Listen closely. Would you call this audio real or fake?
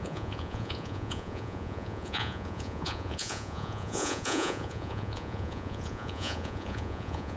fake